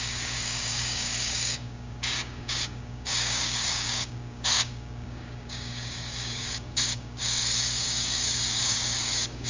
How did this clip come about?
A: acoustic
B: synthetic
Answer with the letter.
B